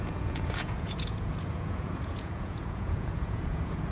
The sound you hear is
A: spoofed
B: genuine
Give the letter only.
A